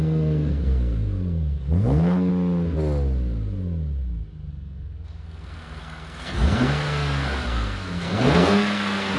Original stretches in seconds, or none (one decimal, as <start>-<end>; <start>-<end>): 2.3-4.5